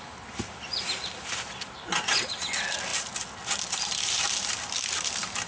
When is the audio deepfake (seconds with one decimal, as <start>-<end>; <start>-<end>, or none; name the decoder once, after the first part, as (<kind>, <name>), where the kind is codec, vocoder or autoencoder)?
none

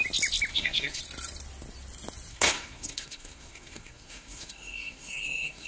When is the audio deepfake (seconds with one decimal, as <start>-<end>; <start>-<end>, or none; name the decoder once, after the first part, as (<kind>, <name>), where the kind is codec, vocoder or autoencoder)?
0.5-1.0 (codec, SNAC); 2.3-5.7

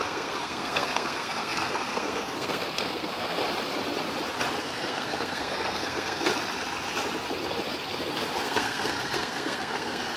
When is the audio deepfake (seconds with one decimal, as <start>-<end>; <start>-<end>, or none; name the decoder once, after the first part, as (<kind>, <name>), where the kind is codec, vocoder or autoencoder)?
0.0-3.4 (codec, SNAC); 4.6-6.3; 8.4-10.2

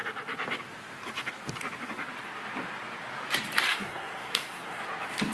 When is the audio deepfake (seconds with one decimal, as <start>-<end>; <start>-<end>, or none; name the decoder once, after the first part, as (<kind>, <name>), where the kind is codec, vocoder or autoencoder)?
3.7-4.8 (codec, SNAC)

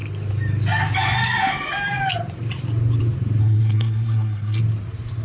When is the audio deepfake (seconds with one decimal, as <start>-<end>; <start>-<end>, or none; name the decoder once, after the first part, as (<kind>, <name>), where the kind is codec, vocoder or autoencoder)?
3.4-4.6 (codec, SNAC)